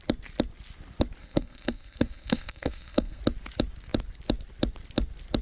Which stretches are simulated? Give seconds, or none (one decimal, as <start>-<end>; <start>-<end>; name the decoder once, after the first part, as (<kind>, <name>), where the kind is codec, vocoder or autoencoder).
1.2-3.2 (codec, SNAC)